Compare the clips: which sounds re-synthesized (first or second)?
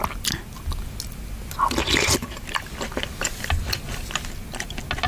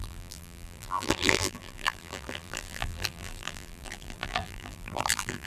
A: second